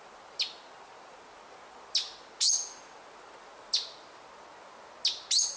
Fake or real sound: real